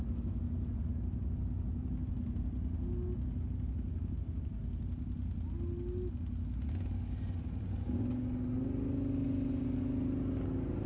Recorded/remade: recorded